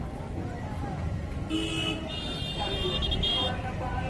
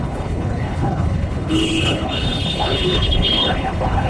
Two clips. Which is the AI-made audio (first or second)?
second